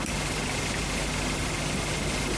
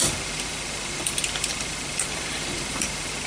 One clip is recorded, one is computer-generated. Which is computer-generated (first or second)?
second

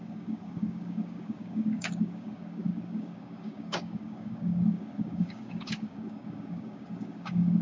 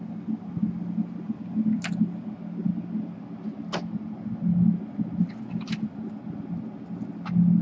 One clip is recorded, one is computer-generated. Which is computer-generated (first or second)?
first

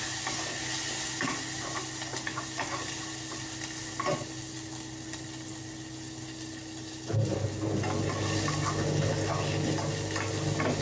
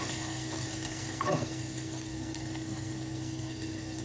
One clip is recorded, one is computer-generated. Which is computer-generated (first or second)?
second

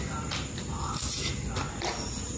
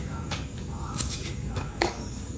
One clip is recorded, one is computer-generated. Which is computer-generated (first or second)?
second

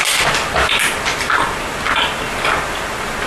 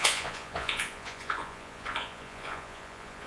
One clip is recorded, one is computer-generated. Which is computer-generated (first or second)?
second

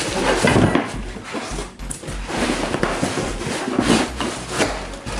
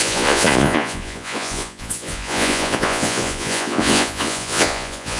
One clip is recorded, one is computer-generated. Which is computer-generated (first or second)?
second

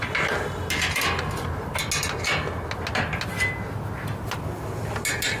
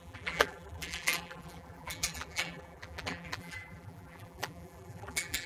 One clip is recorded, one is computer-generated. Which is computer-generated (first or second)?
second